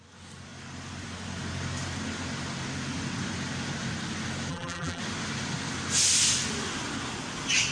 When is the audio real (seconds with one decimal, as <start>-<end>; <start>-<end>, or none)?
0.0-4.5; 5.0-7.7